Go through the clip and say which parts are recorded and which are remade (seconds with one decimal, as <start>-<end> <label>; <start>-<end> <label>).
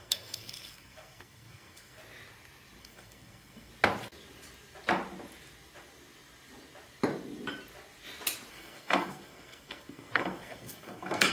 0.0-2.0 remade; 2.0-2.8 recorded; 2.8-3.7 remade; 3.7-8.5 recorded; 8.5-11.3 remade